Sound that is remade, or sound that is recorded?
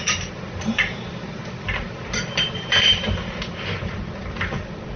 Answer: remade